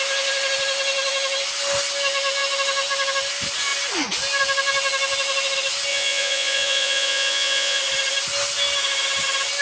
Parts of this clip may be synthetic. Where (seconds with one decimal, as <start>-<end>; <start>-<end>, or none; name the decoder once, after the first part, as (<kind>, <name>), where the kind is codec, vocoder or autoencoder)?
5.9-7.8 (vocoder, Vocos)